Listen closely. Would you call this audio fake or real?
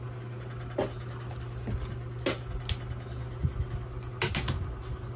real